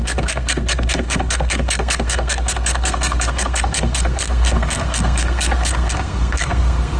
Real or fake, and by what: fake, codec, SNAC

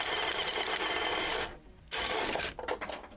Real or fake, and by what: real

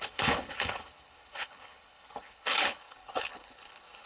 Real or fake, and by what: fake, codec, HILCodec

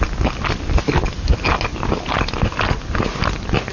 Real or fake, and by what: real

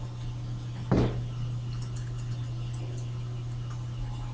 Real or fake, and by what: real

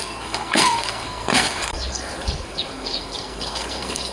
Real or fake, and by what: fake, codec, SNAC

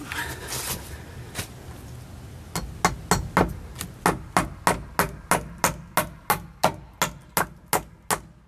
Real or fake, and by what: real